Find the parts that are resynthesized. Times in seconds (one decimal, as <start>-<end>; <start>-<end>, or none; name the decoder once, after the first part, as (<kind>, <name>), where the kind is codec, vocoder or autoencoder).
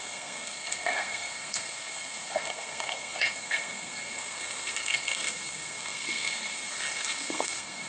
0.0-7.9 (codec, SNAC)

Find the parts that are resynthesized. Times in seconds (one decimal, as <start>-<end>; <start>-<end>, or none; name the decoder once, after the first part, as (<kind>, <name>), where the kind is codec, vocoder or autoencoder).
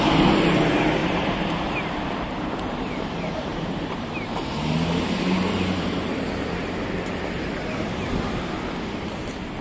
1.0-1.6 (vocoder, BigVGAN v2); 3.5-6.1